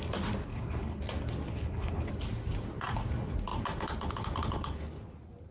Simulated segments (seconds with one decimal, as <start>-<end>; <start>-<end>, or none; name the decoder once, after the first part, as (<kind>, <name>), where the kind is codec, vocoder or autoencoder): 0.5-1.0 (codec, HILCodec); 1.5-2.1